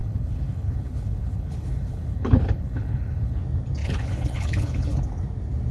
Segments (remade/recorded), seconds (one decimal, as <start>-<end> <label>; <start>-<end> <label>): 0.0-3.4 remade; 3.4-3.8 recorded; 3.8-5.0 remade; 5.0-5.7 recorded